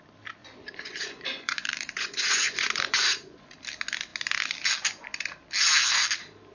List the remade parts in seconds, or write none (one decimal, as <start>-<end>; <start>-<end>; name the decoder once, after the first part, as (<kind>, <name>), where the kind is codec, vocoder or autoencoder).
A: 0.4-3.5 (vocoder, Vocos)